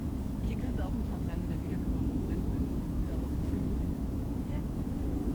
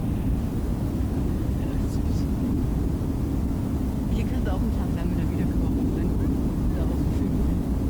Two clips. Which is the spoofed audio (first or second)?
first